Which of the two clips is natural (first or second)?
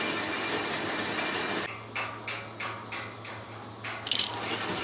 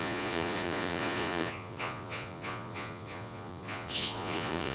first